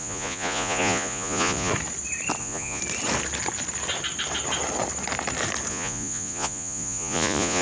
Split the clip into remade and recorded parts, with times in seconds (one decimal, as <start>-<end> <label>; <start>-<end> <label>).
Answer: 0.0-1.7 remade; 1.7-2.4 recorded; 2.4-2.8 remade; 2.8-5.7 recorded; 5.7-7.6 remade